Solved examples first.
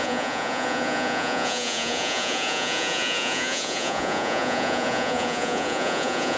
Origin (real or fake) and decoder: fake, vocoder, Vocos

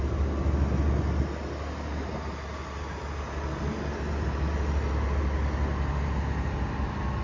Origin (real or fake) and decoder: real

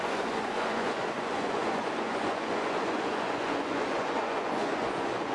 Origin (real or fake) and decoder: fake, vocoder, Vocos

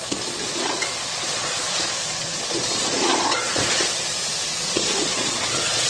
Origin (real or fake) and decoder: fake, vocoder, Vocos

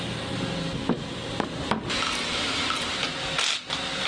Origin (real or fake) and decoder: real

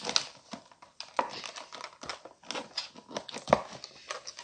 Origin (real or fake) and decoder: real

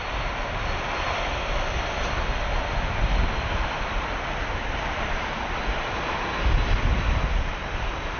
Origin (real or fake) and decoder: real